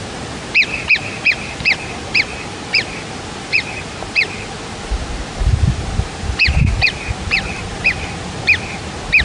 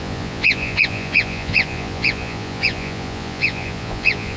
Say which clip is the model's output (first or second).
second